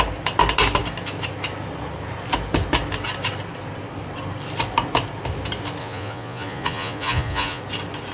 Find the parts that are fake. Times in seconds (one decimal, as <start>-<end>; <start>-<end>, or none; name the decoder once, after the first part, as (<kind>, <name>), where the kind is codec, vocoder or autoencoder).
5.8-7.6 (vocoder, Vocos)